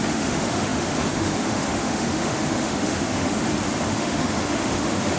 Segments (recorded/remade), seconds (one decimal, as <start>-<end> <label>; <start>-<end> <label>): 0.0-3.4 remade; 3.4-3.9 recorded; 3.9-5.2 remade